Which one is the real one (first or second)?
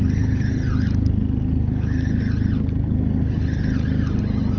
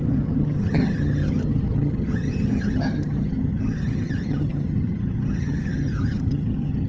first